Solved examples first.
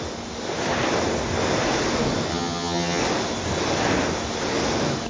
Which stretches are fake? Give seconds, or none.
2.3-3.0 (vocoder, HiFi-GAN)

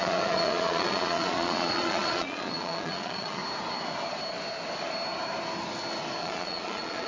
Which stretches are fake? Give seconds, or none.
0.0-3.4 (vocoder, Vocos); 6.2-7.1

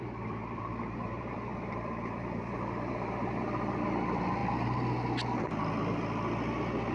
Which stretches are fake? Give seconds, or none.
0.0-4.4 (vocoder, BigVGAN v2)

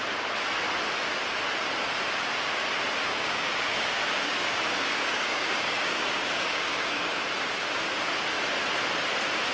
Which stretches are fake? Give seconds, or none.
3.1-7.1 (codec, DAC)